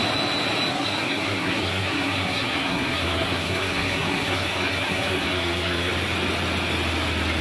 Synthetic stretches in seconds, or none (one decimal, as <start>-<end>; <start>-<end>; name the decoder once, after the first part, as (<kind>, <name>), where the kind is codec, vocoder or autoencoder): 0.7-5.9 (codec, SNAC)